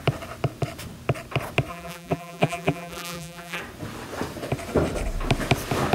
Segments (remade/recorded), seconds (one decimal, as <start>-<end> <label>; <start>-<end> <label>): 0.0-1.7 recorded; 1.7-3.6 remade; 3.6-5.9 recorded